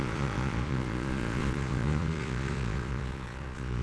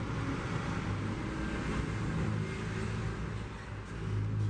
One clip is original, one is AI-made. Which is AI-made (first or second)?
first